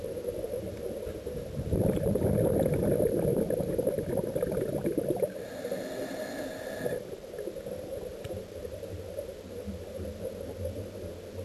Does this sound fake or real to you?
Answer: real